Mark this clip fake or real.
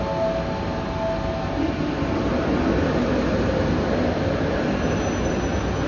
real